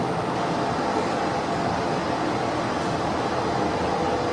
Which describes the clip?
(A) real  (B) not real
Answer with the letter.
A